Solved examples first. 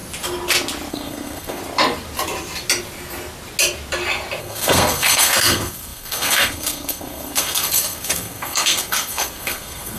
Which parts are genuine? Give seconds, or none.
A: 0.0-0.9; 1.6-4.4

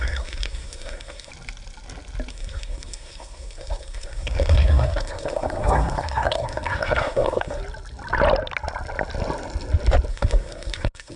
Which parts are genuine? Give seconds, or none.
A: 1.3-2.3; 7.6-10.1

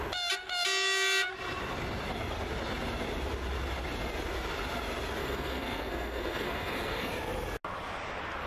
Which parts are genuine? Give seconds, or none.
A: 0.0-5.2; 7.1-8.5

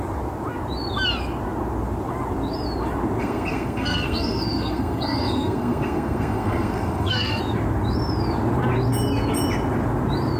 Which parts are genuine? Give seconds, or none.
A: 0.0-3.2; 7.4-10.4

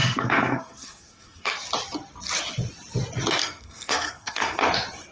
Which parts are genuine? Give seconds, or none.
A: 1.5-3.4; 4.6-5.1

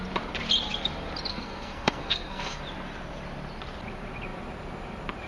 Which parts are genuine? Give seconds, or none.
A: 0.0-1.3; 2.6-5.3

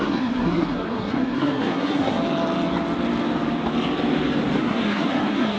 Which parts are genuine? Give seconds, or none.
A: 2.2-4.6